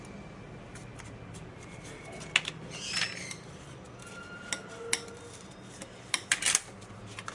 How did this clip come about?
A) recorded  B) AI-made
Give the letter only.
A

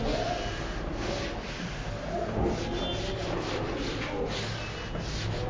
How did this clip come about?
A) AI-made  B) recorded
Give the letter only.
B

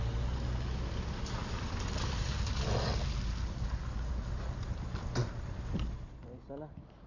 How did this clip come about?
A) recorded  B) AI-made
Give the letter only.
A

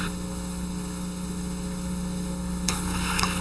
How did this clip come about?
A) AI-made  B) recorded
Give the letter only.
A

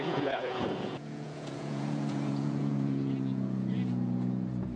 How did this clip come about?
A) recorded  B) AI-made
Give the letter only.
B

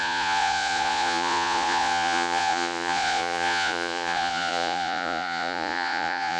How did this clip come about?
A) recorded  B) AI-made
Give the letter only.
B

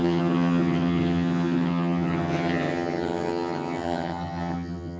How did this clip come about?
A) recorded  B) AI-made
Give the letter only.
B